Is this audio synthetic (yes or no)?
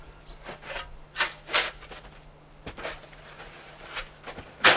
no